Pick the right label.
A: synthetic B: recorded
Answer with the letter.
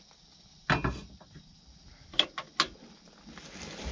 B